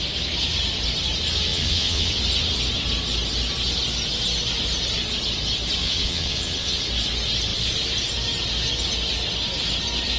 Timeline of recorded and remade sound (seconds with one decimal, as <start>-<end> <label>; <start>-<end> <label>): 0.0-1.5 recorded; 1.5-2.2 remade; 2.2-5.8 recorded; 5.8-6.8 remade; 6.8-10.2 recorded